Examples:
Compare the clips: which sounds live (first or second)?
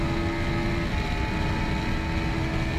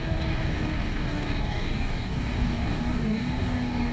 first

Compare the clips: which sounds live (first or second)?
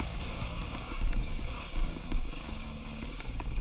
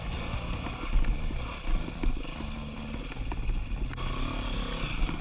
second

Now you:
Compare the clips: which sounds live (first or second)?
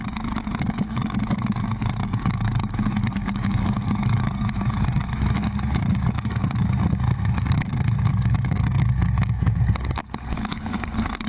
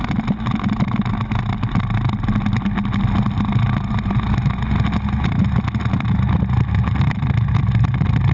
second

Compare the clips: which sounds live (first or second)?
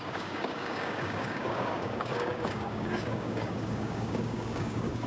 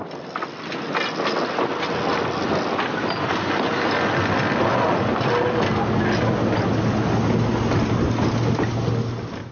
second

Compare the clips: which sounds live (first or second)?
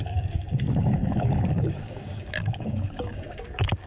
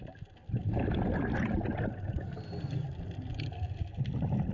second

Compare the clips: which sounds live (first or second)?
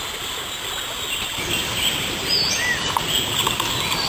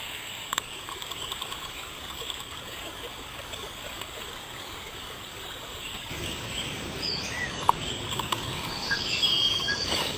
first